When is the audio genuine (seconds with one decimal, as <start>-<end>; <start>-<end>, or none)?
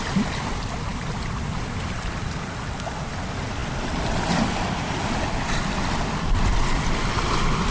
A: 0.0-7.7